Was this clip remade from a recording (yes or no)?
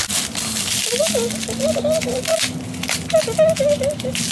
no